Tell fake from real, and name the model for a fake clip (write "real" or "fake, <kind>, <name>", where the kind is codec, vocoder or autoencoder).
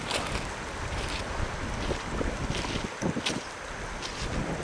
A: real